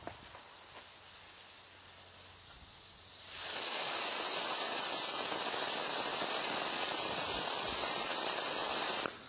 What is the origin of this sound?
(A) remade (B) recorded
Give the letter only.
B